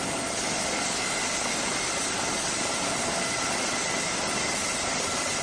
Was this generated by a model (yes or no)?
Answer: no